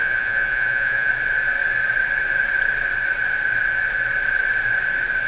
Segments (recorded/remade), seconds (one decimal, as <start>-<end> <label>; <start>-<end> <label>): 0.0-1.1 remade; 1.1-5.3 recorded

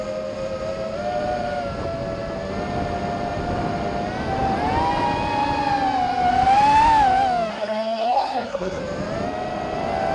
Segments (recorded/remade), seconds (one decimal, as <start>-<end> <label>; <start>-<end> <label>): 0.0-7.5 recorded; 7.5-8.8 remade; 8.8-10.1 recorded

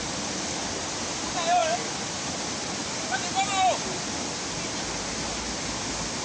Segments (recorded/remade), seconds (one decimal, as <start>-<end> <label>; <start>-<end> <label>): 0.0-6.2 recorded

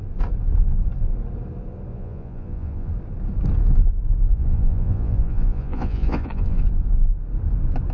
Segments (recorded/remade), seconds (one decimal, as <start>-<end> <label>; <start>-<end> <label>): 0.0-1.9 recorded; 1.9-2.9 remade; 2.9-4.3 recorded; 4.3-6.6 remade; 6.6-7.9 recorded

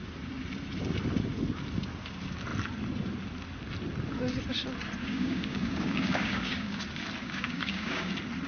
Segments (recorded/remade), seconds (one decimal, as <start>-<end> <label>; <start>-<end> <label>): 0.0-5.0 recorded; 5.0-6.8 remade; 6.8-7.2 recorded; 7.2-8.1 remade; 8.1-8.5 recorded

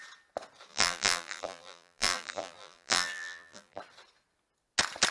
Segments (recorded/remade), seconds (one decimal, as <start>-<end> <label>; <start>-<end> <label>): 0.0-0.7 recorded; 0.7-3.8 remade; 3.8-5.1 recorded